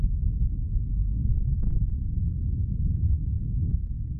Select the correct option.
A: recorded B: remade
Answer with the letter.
B